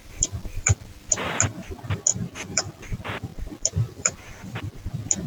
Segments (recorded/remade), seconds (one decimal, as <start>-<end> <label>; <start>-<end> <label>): 0.0-1.4 remade; 1.4-2.1 recorded; 2.1-2.7 remade; 2.7-3.3 recorded; 3.3-4.8 remade; 4.8-5.3 recorded